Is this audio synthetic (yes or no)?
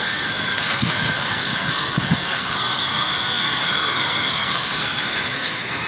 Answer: yes